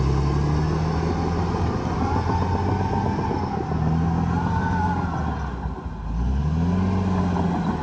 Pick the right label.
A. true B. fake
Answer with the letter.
A